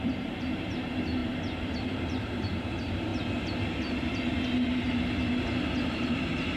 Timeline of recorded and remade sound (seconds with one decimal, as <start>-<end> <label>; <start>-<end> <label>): 0.0-1.2 remade; 1.2-1.7 recorded; 1.7-3.1 remade; 3.1-5.9 recorded; 5.9-6.6 remade